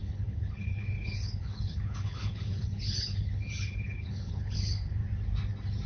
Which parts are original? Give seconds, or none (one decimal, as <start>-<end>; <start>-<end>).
5.0-5.9